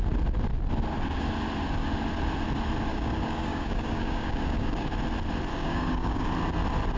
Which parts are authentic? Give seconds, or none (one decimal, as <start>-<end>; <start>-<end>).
0.0-2.9; 4.9-5.5; 6.3-7.0

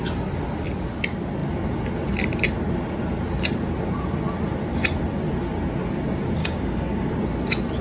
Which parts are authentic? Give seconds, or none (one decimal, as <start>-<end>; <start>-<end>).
0.0-6.4; 7.1-7.8

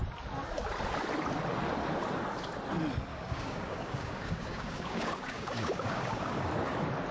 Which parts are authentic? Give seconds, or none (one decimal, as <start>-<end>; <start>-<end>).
0.0-3.1; 6.5-7.1

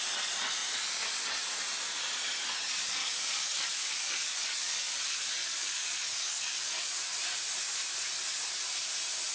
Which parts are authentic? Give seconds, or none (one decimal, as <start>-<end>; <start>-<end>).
0.0-3.0; 4.9-5.4; 7.0-9.3